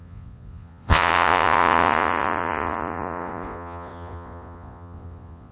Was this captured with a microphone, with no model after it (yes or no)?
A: no